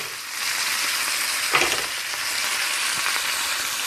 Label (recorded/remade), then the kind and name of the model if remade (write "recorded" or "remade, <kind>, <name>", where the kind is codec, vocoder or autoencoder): recorded